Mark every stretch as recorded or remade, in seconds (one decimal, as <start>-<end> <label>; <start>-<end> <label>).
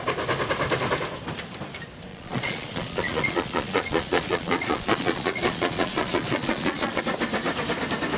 0.0-2.1 recorded; 2.1-7.0 remade; 7.0-8.2 recorded